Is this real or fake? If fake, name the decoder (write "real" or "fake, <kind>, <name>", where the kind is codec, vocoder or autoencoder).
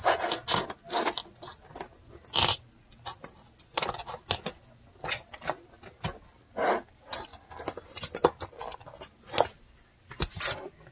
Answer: real